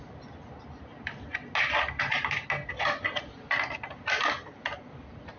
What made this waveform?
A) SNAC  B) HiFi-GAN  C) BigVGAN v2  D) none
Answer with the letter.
D